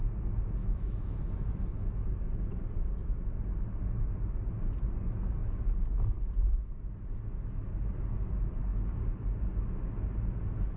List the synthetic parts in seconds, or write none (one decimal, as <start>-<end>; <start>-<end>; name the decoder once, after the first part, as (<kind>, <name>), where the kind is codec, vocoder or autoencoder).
0.6-1.2 (autoencoder, DAC-VAE)